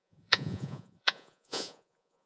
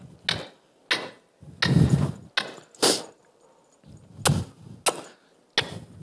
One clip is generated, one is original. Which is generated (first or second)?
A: first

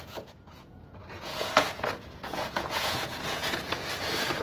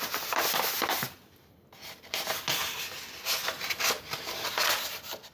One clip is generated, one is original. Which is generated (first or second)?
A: first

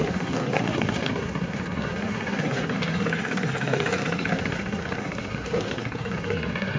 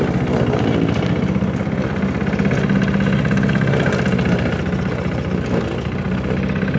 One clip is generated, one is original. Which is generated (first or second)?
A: first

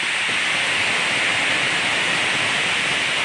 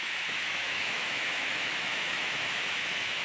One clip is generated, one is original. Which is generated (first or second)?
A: second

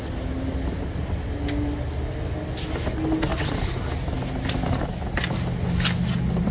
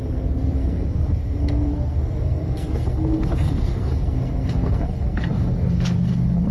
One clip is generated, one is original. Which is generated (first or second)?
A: second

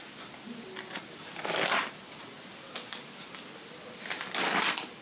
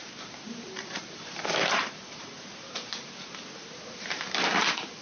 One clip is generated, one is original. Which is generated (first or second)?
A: second